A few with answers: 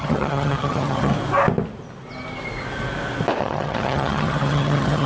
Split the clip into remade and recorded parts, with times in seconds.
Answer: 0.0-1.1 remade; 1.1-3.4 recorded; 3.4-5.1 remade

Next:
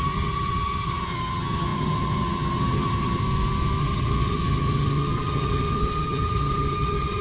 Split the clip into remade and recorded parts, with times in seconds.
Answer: 0.0-3.2 remade; 3.2-3.8 recorded; 3.8-7.2 remade